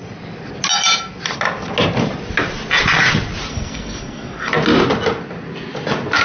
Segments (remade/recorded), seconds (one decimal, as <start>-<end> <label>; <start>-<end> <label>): 0.0-3.5 recorded; 3.5-4.5 remade; 4.5-6.2 recorded